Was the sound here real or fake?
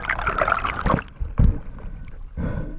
real